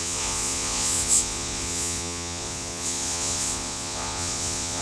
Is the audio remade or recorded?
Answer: remade